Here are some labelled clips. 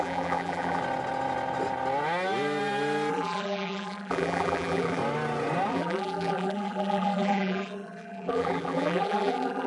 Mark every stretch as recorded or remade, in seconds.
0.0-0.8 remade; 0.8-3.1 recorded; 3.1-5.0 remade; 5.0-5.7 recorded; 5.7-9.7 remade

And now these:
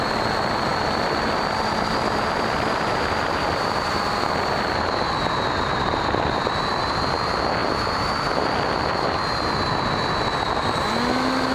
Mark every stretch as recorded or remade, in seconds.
0.0-0.7 recorded; 0.7-3.4 remade; 3.4-11.5 recorded

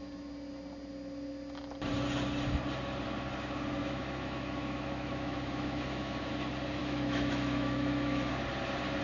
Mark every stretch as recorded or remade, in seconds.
0.0-3.8 recorded; 3.8-6.3 remade; 6.3-6.8 recorded; 6.8-8.3 remade; 8.3-9.0 recorded

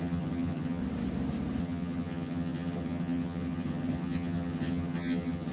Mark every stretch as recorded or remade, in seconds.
0.0-0.8 remade; 0.8-1.6 recorded; 1.6-5.5 remade